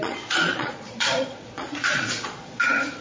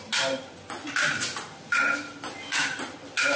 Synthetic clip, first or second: first